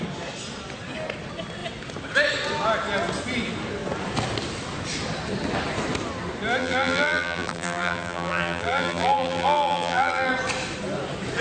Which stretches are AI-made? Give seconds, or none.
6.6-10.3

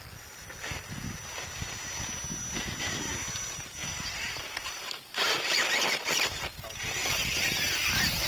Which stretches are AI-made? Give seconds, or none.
3.8-6.2